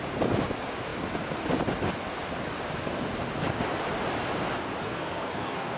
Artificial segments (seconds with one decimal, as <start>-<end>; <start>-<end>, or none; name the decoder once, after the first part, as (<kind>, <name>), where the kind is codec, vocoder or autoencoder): 4.8-5.8 (codec, SNAC)